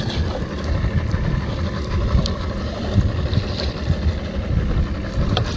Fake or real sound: real